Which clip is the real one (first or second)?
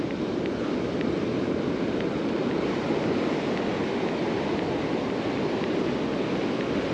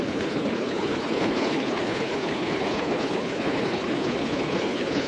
first